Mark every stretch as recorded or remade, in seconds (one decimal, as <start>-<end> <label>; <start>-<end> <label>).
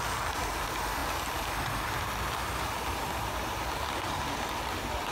0.0-5.1 recorded